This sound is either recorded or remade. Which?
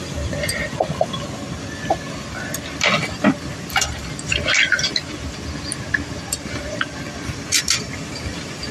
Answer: recorded